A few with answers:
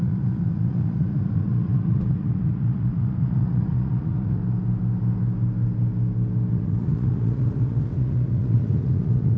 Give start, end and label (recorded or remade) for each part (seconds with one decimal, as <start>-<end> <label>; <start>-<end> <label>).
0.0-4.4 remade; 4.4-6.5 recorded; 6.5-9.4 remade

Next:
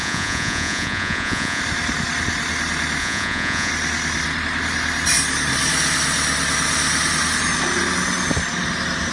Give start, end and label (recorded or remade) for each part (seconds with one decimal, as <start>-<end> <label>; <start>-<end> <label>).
0.0-1.6 remade; 1.6-3.0 recorded; 3.0-3.7 remade; 3.7-9.1 recorded

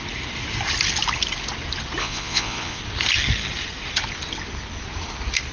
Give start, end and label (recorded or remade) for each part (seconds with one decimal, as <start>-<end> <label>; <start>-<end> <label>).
0.0-2.0 recorded; 2.0-2.8 remade; 2.8-5.5 recorded

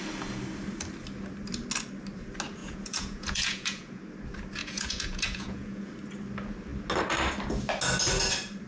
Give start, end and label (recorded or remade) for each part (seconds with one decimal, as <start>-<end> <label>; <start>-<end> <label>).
0.0-2.6 recorded; 2.6-4.0 remade; 4.0-4.6 recorded; 4.6-5.9 remade; 5.9-8.7 recorded

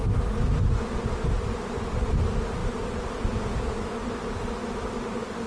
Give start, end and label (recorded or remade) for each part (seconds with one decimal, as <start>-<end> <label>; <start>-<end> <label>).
0.0-5.5 recorded

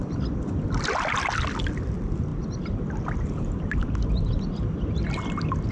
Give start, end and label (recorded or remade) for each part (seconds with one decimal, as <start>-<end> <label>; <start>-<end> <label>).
0.0-5.7 recorded

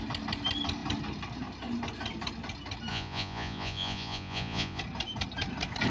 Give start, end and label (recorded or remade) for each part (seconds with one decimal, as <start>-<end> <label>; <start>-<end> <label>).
0.0-2.9 recorded; 2.9-4.8 remade; 4.8-5.9 recorded

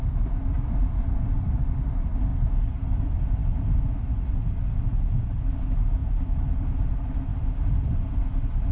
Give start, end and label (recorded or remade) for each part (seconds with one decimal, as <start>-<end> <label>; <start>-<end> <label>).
0.0-8.7 recorded